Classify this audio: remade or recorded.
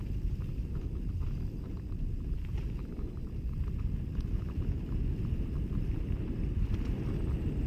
recorded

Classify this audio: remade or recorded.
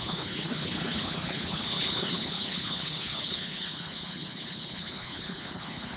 remade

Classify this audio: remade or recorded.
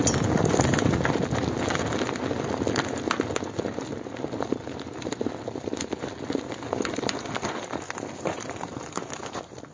recorded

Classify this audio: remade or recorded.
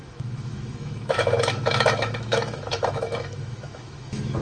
remade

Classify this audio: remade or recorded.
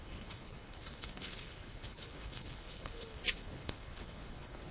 remade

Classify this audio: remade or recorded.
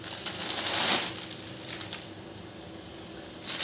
recorded